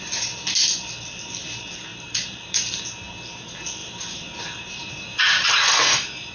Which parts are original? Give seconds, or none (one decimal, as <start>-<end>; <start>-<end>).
0.0-1.9; 2.8-3.8; 5.6-6.3